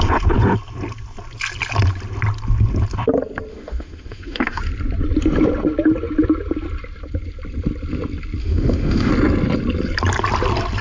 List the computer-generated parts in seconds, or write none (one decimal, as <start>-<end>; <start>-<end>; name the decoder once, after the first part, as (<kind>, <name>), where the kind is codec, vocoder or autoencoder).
3.5-4.6 (autoencoder, DAC-VAE); 8.4-9.1